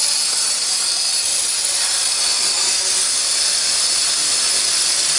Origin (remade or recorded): recorded